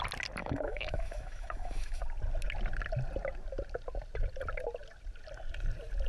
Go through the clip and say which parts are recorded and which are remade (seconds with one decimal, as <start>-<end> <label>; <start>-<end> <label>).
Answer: 0.0-0.4 recorded; 0.4-2.0 remade; 2.0-6.1 recorded